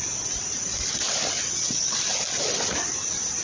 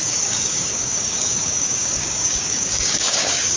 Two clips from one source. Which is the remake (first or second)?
second